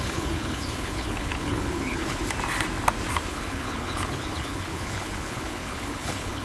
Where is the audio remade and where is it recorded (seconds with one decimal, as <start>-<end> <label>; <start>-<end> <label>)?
0.0-2.2 remade; 2.2-3.3 recorded; 3.3-6.4 remade